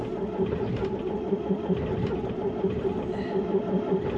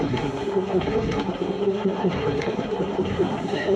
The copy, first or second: second